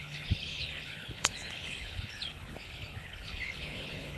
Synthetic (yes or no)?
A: yes